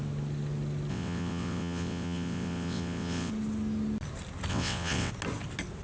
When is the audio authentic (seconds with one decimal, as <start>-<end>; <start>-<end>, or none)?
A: 0.0-0.9; 3.3-4.5; 5.1-5.8